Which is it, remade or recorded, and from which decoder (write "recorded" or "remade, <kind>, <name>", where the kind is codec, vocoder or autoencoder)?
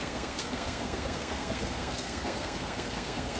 remade, codec, SNAC